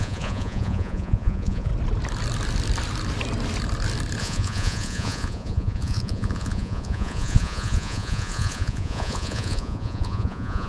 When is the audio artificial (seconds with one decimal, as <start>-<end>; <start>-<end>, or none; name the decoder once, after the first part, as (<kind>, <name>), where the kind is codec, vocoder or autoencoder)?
0.0-1.7 (vocoder, Vocos); 4.2-10.7